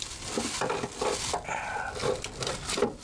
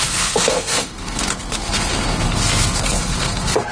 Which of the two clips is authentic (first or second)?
first